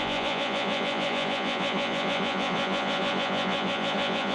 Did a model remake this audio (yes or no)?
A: yes